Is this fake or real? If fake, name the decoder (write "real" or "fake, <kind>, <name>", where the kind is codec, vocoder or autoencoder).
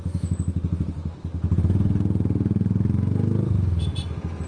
real